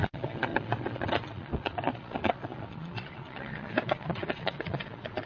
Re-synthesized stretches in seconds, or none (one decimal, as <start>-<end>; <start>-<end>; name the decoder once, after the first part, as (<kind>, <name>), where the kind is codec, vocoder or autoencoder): 0.0-5.3 (vocoder, Vocos)